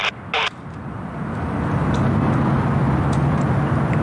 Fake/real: real